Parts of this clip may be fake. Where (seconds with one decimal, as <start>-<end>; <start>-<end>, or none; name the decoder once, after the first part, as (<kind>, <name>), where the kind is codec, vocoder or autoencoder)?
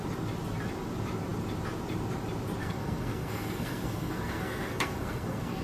2.6-5.6 (codec, SNAC)